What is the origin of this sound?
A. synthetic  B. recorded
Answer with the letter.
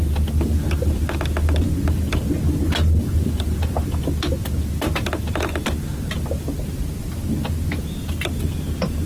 B